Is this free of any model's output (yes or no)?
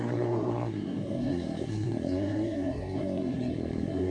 no